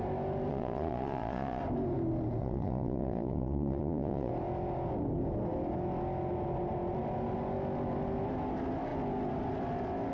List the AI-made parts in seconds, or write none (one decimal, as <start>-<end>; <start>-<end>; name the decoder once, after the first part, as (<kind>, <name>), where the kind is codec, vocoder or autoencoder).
0.5-1.6 (vocoder, Vocos); 2.4-4.3